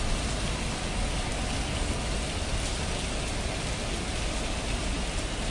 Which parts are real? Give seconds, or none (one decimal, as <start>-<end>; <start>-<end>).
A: 0.0-5.5